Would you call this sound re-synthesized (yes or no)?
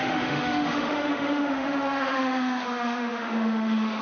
yes